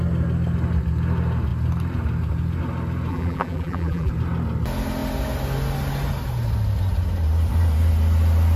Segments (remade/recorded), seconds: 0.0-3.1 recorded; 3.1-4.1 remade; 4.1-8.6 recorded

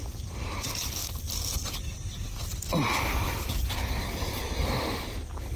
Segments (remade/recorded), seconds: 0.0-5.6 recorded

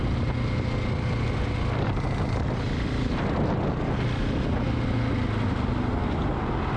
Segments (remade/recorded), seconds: 0.0-6.8 recorded

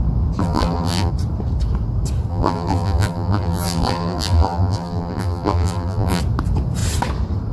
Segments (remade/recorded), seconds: 0.0-0.4 recorded; 0.4-1.1 remade; 1.1-2.3 recorded; 2.3-6.2 remade; 6.2-7.5 recorded